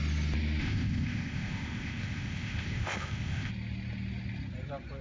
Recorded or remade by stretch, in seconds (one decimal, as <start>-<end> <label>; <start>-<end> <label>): 0.0-0.6 recorded; 0.6-3.5 remade; 3.5-5.0 recorded